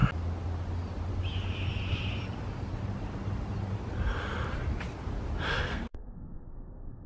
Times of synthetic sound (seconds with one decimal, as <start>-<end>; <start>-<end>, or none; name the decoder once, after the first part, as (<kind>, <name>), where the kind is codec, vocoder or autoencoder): 5.7-7.1 (codec, SNAC)